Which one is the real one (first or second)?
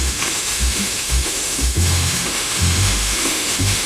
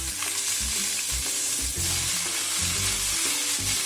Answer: second